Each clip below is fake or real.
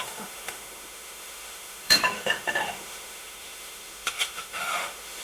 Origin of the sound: fake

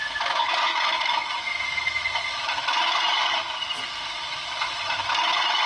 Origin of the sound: fake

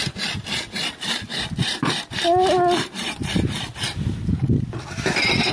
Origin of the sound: real